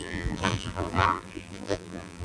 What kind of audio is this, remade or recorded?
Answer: remade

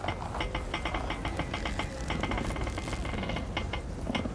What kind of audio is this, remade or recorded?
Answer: recorded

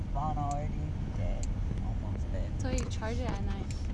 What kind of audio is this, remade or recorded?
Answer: recorded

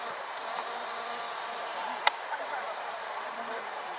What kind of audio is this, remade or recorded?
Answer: remade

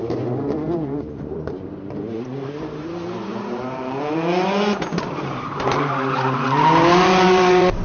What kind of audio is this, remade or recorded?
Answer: remade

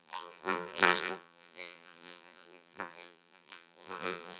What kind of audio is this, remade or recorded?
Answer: remade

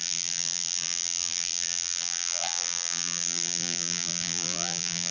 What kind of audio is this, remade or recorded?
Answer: remade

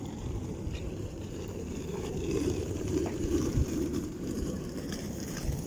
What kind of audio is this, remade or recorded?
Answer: remade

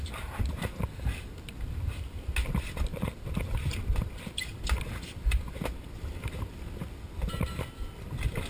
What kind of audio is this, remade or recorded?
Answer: recorded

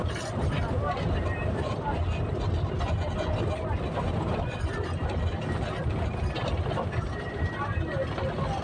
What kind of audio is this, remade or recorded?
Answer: recorded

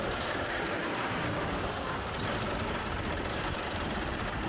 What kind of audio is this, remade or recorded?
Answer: remade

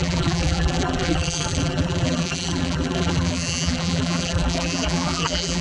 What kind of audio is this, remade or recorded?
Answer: remade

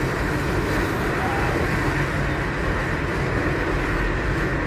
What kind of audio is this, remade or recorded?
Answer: remade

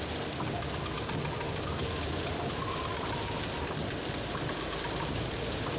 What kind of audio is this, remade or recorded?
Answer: remade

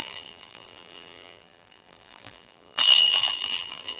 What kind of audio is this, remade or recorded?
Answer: remade